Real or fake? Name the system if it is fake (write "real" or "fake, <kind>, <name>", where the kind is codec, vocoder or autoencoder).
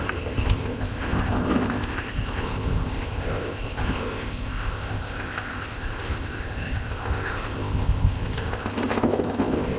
fake, codec, ZipCodec